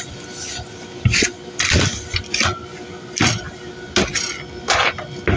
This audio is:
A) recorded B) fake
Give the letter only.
A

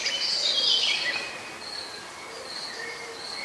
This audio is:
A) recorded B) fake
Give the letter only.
A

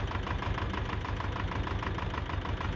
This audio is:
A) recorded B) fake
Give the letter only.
A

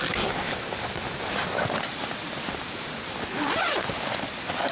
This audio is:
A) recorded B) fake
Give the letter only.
A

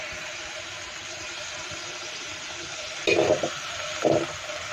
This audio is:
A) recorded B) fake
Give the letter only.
A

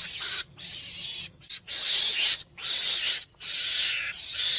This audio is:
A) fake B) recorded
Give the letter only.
B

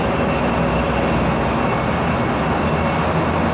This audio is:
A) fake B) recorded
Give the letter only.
B